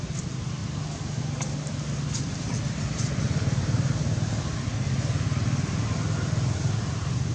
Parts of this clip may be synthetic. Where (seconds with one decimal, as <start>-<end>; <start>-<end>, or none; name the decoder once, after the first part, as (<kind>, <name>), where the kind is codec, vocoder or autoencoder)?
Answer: none